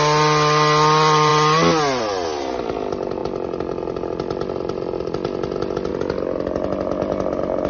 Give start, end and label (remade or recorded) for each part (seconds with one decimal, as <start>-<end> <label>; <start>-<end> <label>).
0.0-7.7 recorded